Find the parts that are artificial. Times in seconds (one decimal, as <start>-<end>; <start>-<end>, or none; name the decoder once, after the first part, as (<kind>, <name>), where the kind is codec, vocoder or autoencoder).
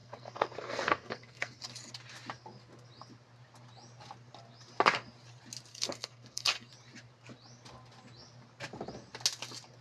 0.0-1.6 (codec, SNAC); 5.7-6.7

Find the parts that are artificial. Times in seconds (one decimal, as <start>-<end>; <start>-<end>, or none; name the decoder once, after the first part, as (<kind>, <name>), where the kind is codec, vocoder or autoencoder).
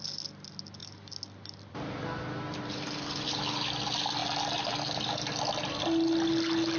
none